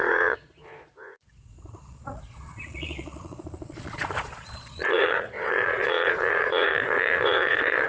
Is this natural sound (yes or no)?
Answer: no